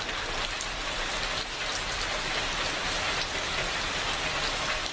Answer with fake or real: real